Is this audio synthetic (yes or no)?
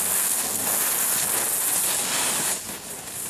no